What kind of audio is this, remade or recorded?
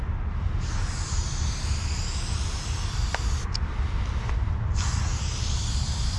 recorded